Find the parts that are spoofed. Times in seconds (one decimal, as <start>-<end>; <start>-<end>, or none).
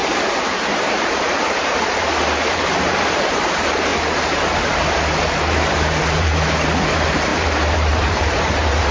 0.0-3.9; 5.3-8.9